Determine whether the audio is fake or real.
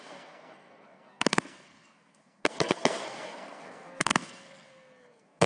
fake